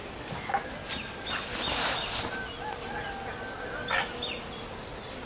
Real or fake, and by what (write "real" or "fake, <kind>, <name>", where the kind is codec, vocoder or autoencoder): real